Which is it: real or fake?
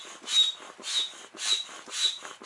real